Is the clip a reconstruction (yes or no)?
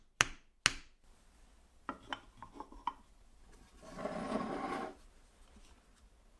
no